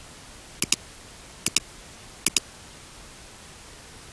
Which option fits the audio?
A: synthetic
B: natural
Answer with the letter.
B